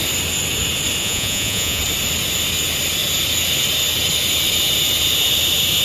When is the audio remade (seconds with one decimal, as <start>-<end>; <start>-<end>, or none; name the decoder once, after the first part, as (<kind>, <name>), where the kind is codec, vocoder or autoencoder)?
1.0-1.8 (vocoder, Vocos)

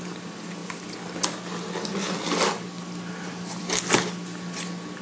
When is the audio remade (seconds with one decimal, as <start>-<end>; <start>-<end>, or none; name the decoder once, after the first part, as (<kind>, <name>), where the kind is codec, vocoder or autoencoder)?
none